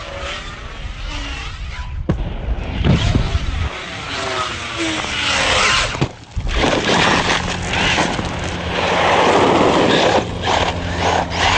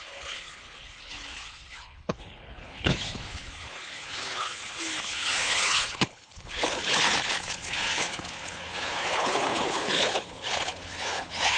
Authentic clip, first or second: first